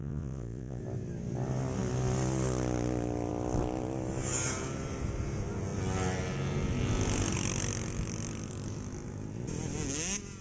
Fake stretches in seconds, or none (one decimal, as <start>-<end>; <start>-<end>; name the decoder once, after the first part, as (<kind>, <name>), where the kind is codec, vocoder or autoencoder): 0.0-0.8 (vocoder, Vocos)